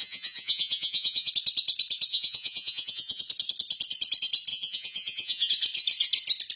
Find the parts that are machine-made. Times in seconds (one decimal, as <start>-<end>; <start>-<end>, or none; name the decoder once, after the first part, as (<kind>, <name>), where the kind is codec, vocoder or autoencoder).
0.0-1.3 (vocoder, Vocos); 2.1-3.2; 4.5-5.5